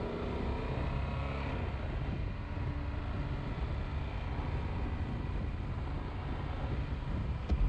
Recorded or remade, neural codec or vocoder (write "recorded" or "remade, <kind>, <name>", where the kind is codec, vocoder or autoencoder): recorded